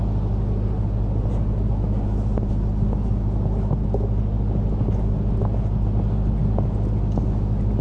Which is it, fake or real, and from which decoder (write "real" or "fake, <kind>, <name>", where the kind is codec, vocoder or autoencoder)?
real